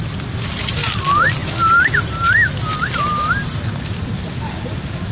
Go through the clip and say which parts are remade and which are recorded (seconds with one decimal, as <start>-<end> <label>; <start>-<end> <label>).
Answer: 0.0-5.1 recorded